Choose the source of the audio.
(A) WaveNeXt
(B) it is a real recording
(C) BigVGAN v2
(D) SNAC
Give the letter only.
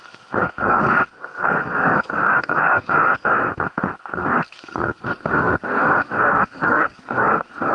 D